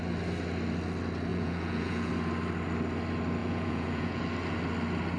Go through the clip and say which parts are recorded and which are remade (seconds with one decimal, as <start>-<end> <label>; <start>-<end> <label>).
0.0-1.3 recorded; 1.3-2.1 remade; 2.1-3.4 recorded; 3.4-4.2 remade; 4.2-5.2 recorded